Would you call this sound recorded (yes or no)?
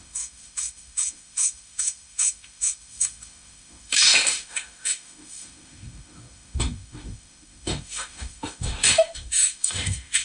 no